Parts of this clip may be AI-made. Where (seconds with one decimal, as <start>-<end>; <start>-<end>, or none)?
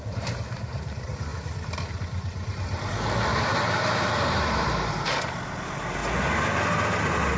0.0-1.3; 1.9-6.0